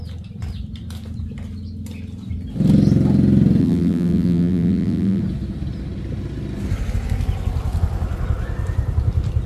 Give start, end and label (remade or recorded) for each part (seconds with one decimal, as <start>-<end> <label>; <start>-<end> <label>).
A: 0.0-3.6 recorded; 3.6-5.2 remade; 5.2-9.5 recorded